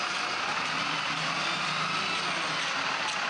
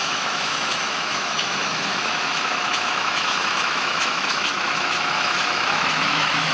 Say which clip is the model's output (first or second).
second